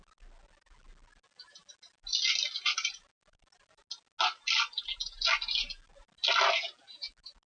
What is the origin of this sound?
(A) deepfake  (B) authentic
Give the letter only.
B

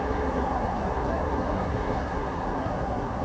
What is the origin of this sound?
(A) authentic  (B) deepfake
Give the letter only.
B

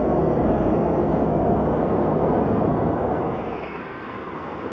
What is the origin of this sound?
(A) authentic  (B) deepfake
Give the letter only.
B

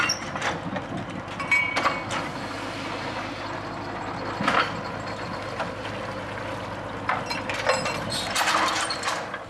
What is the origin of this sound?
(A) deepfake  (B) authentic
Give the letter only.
B